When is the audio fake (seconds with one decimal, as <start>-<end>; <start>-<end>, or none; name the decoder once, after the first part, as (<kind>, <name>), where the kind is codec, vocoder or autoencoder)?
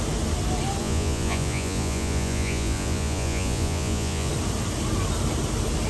0.8-4.3 (vocoder, Vocos)